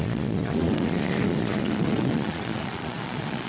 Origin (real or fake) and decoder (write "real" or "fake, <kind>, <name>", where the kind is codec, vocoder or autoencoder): fake, vocoder, Vocos